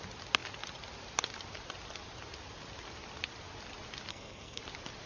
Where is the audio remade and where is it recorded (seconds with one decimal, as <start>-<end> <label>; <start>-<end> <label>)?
0.0-4.1 recorded; 4.1-4.6 remade; 4.6-5.1 recorded